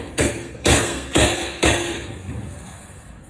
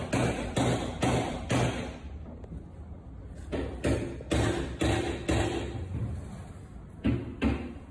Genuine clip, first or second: second